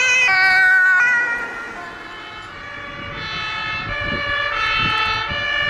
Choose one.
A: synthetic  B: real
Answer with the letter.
B